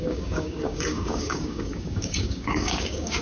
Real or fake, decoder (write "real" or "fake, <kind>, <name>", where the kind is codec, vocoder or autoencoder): fake, codec, DAC